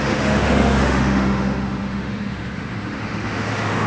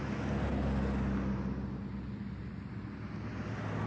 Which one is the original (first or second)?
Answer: second